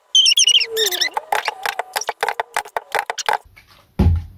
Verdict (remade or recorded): recorded